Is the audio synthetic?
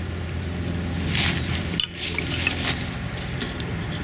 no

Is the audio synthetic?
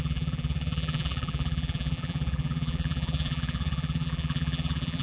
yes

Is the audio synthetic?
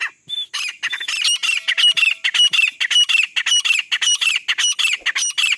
no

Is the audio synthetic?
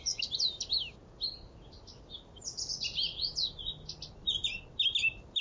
no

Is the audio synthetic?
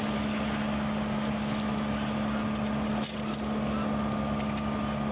no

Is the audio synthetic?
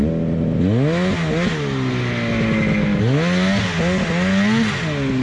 no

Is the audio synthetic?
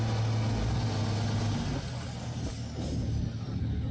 no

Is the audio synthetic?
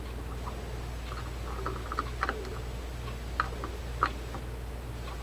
no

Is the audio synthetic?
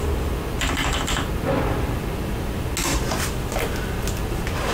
no